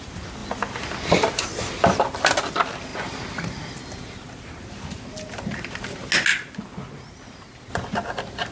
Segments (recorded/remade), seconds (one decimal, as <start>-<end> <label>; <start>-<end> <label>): 0.0-8.5 recorded